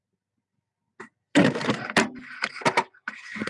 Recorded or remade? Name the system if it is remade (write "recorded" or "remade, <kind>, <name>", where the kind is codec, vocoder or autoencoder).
recorded